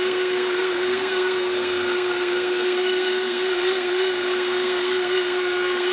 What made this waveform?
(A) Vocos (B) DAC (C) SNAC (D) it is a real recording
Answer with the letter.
C